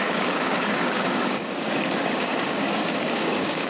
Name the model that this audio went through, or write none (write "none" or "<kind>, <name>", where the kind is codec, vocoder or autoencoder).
codec, DAC